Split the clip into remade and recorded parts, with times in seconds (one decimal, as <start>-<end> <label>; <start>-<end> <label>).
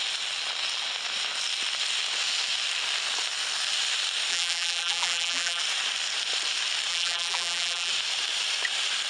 0.0-4.3 recorded; 4.3-5.6 remade; 5.6-6.9 recorded; 6.9-7.9 remade; 7.9-9.1 recorded